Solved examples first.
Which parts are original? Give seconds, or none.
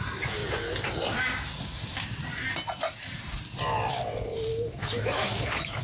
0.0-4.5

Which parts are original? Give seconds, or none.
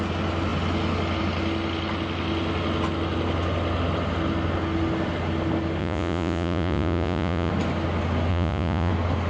0.0-5.8; 7.5-8.3; 8.9-9.3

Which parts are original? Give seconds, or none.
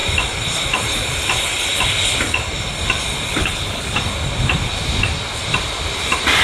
0.0-3.3; 4.0-6.4